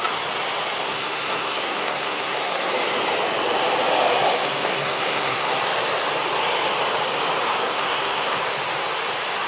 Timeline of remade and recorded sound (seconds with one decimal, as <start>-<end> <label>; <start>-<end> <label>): 0.0-0.8 recorded; 0.8-2.7 remade; 2.7-4.1 recorded; 4.1-5.6 remade; 5.6-7.6 recorded; 7.6-8.4 remade; 8.4-9.5 recorded